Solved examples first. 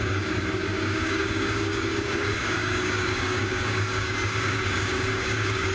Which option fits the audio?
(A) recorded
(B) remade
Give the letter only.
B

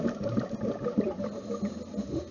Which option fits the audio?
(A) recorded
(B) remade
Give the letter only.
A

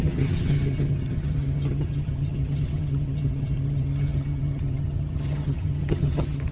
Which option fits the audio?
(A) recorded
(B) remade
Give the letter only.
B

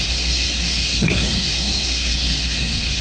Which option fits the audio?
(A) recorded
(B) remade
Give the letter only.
B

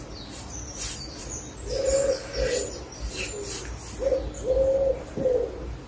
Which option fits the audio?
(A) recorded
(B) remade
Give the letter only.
A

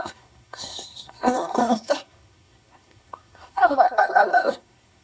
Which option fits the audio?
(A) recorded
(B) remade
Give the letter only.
B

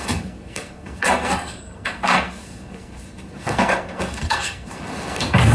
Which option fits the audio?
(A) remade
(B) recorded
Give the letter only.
A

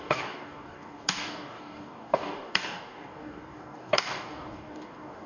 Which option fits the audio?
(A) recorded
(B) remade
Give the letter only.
B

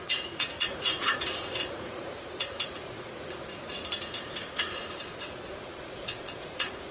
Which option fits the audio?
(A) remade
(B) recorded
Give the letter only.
A